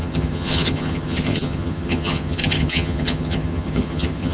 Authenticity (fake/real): fake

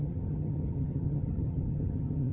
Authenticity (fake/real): fake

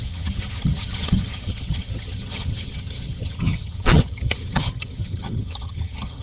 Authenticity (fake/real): fake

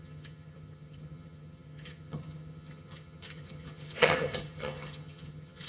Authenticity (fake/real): fake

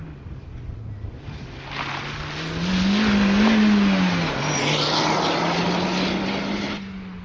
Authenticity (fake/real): real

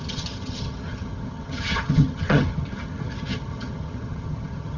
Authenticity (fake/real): fake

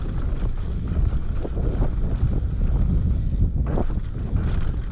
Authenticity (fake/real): real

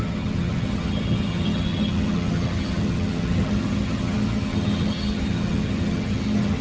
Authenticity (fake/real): fake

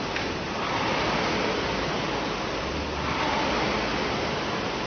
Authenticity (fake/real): real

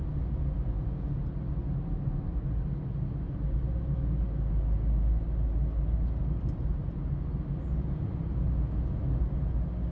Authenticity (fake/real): real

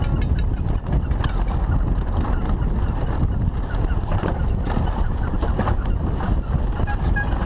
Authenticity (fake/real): real